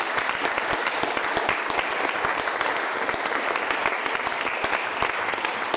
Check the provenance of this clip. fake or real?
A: real